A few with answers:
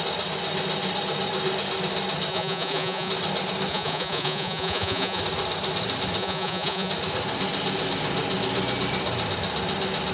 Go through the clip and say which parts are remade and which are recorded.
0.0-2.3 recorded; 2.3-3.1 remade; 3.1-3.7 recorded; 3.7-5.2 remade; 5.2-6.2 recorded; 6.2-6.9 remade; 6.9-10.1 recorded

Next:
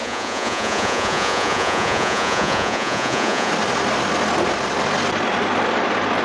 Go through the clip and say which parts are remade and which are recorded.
0.0-3.5 remade; 3.5-6.2 recorded

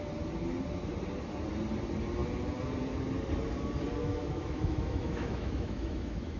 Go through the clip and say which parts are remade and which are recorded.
0.0-4.0 recorded; 4.0-6.4 remade

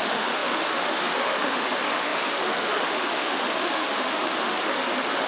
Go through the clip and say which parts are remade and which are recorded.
0.0-5.3 remade

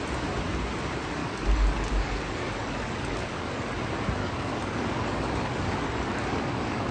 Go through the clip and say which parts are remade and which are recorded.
0.0-1.2 recorded; 1.2-3.7 remade; 3.7-4.2 recorded; 4.2-6.9 remade

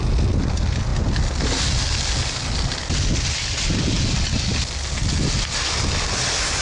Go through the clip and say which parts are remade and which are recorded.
0.0-6.6 recorded

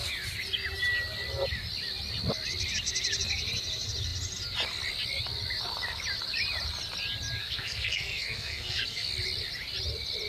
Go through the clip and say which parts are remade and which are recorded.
0.0-7.4 recorded; 7.4-9.1 remade; 9.1-10.3 recorded